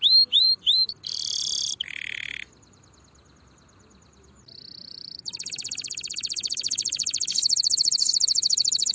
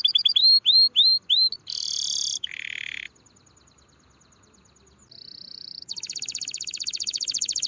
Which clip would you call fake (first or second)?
first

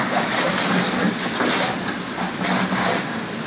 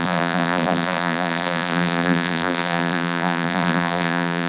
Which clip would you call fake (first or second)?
second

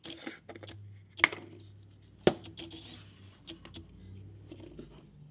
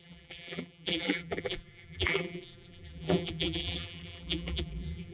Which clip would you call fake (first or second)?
second